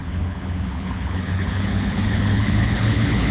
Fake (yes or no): yes